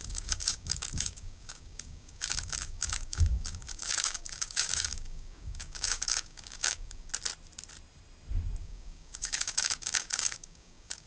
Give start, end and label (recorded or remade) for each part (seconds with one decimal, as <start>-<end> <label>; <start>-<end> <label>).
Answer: 0.0-7.1 remade; 7.1-8.6 recorded; 8.6-11.1 remade

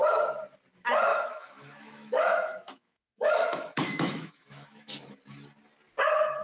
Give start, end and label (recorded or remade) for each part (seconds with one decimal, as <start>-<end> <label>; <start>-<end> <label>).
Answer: 0.0-1.1 recorded; 1.1-4.9 remade; 4.9-6.4 recorded